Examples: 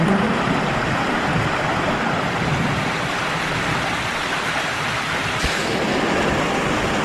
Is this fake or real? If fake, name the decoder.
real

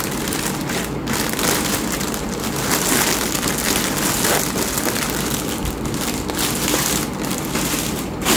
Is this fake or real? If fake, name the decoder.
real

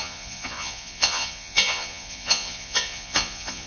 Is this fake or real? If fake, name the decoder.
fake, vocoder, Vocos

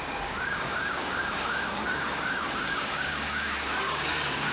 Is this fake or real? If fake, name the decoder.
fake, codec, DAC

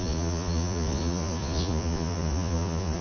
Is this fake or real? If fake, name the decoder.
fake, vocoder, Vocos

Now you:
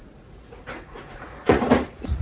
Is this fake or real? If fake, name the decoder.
fake, vocoder, Vocos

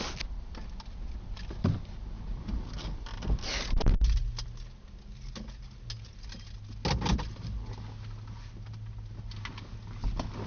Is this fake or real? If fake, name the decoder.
real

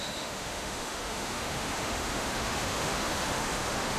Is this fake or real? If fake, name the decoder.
fake, autoencoder, DAC-VAE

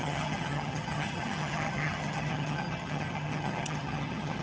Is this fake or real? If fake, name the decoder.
fake, vocoder, HiFi-GAN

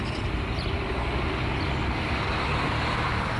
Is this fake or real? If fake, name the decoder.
real